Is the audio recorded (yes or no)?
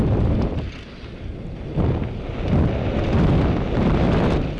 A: yes